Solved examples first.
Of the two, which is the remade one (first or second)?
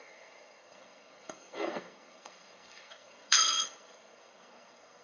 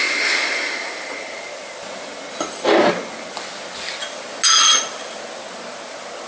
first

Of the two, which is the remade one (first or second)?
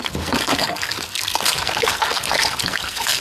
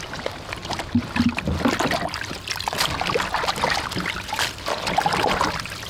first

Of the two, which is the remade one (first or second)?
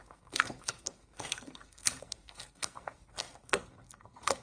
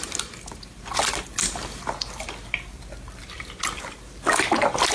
first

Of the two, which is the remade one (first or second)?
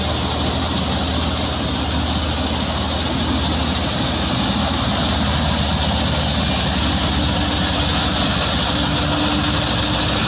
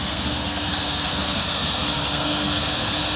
second